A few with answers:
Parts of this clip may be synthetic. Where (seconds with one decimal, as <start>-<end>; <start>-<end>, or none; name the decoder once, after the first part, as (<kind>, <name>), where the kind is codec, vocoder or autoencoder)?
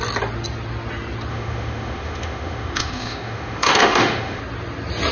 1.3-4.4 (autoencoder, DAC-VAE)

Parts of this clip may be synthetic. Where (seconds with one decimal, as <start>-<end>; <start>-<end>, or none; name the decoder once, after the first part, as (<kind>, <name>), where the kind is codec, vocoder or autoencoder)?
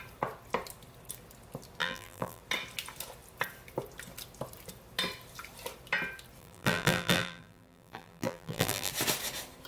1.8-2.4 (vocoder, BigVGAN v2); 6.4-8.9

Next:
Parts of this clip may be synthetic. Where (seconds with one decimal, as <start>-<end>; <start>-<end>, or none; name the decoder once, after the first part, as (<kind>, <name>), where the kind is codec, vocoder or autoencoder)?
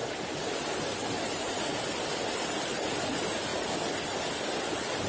none